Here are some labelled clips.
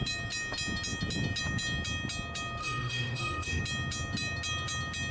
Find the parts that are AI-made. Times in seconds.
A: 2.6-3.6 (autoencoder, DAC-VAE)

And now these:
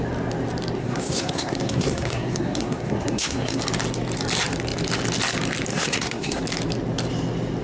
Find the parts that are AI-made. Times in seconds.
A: 0.8-3.6 (codec, SNAC); 5.7-6.4

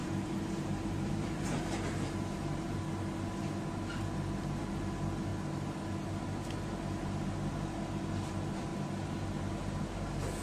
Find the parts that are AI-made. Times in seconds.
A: 0.0-1.9 (vocoder, BigVGAN v2)

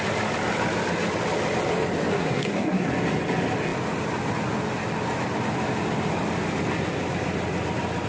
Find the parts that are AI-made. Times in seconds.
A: 2.1-2.9 (codec, SNAC)